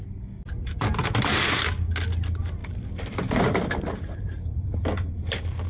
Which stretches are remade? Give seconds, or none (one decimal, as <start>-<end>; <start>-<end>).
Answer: 2.6-5.1